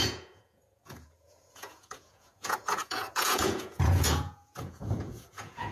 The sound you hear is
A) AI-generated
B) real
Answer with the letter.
A